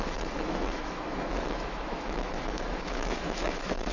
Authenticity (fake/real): fake